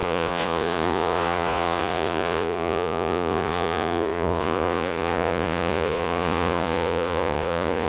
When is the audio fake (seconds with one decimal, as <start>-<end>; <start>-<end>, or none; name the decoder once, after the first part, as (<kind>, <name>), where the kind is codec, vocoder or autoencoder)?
0.0-7.9 (vocoder, Vocos)